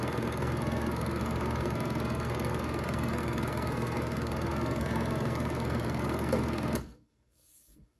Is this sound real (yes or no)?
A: no